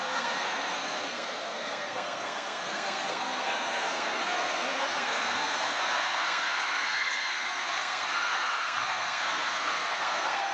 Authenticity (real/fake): fake